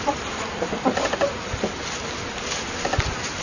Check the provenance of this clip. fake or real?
real